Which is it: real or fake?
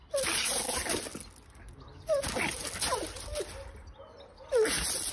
real